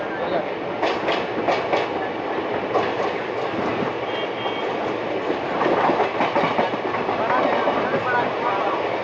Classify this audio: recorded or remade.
recorded